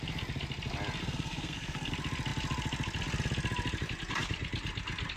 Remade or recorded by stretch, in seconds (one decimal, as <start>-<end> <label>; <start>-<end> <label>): 0.0-1.0 recorded; 1.0-1.9 remade; 1.9-5.2 recorded